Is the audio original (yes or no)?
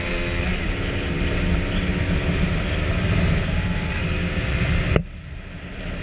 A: yes